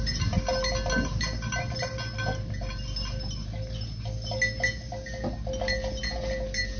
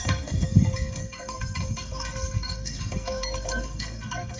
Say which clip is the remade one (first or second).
second